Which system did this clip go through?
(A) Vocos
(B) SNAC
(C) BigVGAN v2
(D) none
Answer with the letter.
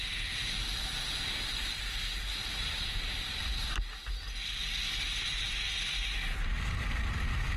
D